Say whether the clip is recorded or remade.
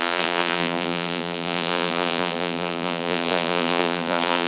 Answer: remade